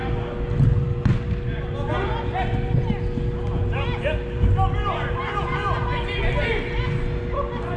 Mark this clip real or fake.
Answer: real